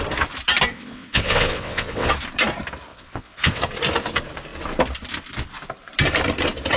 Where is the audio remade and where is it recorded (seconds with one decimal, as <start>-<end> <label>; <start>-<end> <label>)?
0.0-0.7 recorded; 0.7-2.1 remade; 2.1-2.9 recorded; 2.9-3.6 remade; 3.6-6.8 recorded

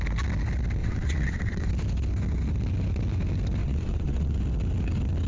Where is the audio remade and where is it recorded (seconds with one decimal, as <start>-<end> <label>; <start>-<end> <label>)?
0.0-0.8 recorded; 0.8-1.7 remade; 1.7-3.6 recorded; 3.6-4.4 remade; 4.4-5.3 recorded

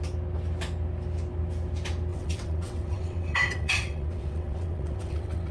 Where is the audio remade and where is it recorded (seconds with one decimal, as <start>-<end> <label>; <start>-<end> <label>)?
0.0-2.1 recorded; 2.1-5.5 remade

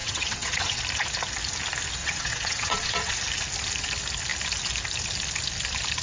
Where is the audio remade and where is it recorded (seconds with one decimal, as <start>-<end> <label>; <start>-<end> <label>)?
0.0-0.8 remade; 0.8-2.0 recorded; 2.0-3.2 remade; 3.2-6.0 recorded